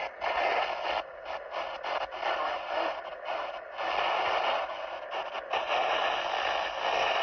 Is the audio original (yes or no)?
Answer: yes